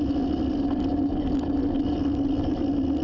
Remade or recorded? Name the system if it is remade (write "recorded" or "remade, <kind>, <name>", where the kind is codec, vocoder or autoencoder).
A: recorded